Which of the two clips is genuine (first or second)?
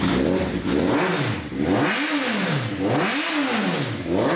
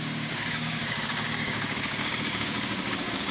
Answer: first